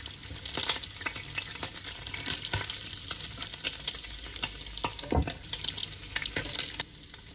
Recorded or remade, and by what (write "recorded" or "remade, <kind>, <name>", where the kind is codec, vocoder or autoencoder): recorded